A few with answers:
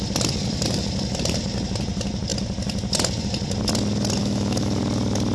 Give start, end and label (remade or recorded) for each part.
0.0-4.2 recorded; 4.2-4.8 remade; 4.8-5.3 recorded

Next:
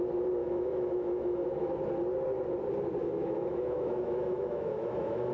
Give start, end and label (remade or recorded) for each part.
0.0-0.4 recorded; 0.4-1.7 remade; 1.7-3.0 recorded; 3.0-5.3 remade

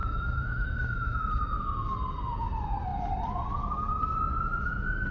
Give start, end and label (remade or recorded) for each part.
0.0-1.3 remade; 1.3-5.1 recorded

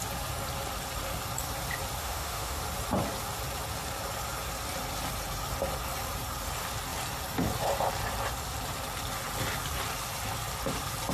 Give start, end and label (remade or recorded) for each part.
0.0-2.0 recorded; 2.0-2.6 remade; 2.6-11.1 recorded

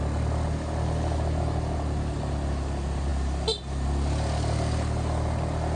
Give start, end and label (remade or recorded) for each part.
0.0-5.8 recorded

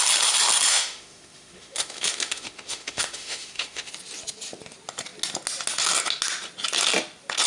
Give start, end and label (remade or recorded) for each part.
0.0-0.7 recorded; 0.7-3.9 remade; 3.9-7.5 recorded

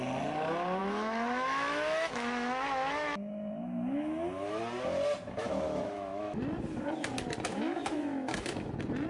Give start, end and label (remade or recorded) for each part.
0.0-0.8 recorded; 0.8-4.6 remade; 4.6-5.4 recorded; 5.4-6.4 remade; 6.4-7.5 recorded; 7.5-8.7 remade; 8.7-9.1 recorded